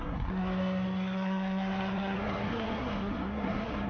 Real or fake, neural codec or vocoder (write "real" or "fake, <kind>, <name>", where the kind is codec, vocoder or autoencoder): fake, codec, SNAC